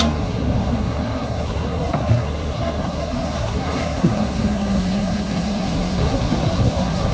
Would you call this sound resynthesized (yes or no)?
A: yes